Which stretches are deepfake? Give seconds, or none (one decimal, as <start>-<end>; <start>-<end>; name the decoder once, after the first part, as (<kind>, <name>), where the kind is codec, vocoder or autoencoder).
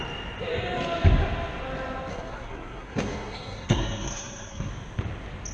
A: 2.1-4.7 (codec, SNAC)